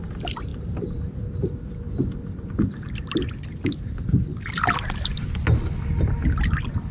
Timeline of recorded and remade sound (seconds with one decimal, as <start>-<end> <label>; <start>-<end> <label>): 0.0-6.9 recorded